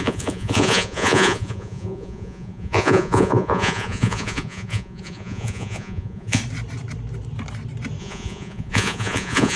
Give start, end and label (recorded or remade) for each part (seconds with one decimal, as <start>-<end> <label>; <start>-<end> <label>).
0.0-6.4 remade; 6.4-8.0 recorded; 8.0-9.6 remade